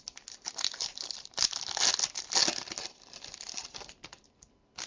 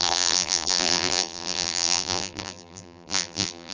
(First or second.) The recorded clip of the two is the first